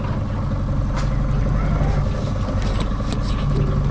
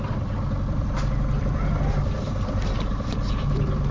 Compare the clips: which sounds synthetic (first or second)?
second